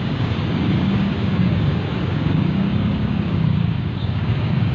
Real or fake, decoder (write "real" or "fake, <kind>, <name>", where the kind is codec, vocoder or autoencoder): fake, codec, DAC